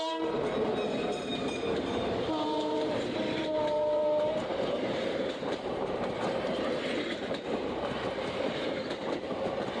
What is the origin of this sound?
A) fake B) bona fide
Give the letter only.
A